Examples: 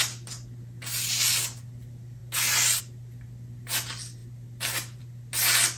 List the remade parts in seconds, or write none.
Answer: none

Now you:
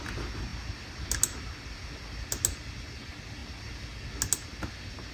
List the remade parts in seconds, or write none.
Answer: none

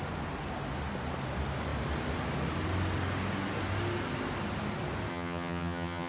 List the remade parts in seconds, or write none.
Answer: 5.1-6.1 (vocoder, HiFi-GAN)

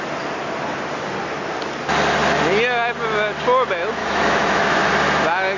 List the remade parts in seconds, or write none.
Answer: 4.0-4.9 (autoencoder, DAC-VAE)

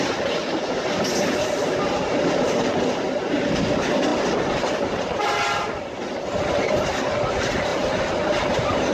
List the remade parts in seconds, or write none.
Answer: none

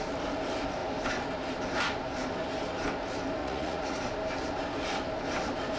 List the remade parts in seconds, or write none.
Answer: 3.4-4.0 (vocoder, Vocos)

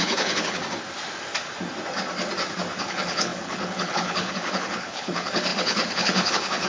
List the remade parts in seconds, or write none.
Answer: 0.0-0.6 (codec, HILCodec); 2.8-6.7